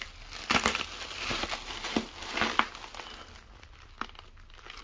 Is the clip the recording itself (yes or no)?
yes